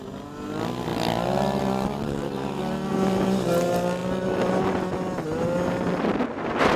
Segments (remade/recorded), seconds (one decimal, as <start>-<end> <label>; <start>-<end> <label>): 0.0-6.8 recorded